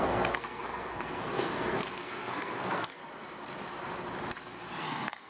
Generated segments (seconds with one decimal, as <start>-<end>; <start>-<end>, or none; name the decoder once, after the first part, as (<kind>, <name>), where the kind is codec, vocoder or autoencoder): 0.0-3.0 (codec, SNAC); 4.8-5.3